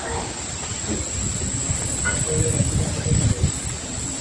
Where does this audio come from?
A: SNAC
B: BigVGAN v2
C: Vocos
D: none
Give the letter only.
D